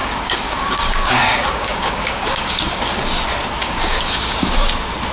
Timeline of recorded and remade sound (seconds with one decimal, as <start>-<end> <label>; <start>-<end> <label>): 0.0-3.1 remade; 3.1-3.6 recorded; 3.6-4.6 remade; 4.6-5.1 recorded